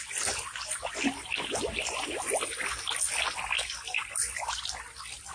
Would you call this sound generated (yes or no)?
no